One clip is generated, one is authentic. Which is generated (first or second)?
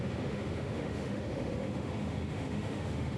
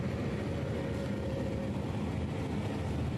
first